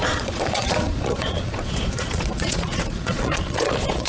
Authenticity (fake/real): fake